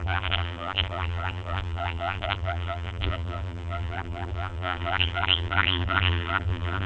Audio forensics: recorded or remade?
remade